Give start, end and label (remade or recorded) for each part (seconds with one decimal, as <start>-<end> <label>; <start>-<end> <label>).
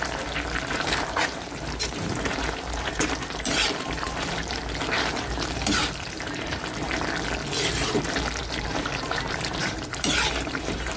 0.0-6.6 remade; 6.6-8.4 recorded; 8.4-11.0 remade